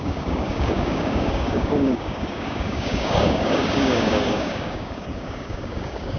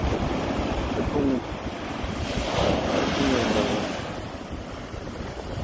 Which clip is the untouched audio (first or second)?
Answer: second